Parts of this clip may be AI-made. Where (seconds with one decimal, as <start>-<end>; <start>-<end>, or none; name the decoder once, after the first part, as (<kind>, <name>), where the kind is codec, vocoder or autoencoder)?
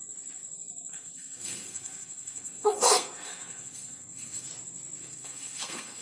0.9-4.5 (codec, SNAC); 5.0-6.0